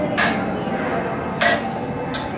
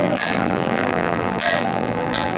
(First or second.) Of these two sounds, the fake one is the second